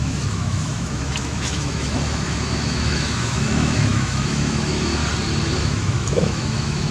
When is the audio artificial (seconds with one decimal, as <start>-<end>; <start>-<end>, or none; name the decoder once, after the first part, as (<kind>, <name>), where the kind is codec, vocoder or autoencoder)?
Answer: 0.0-5.0 (autoencoder, DAC-VAE); 5.6-6.9